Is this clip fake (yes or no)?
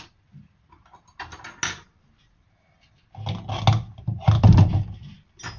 no